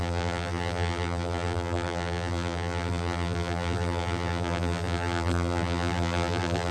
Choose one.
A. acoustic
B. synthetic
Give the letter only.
B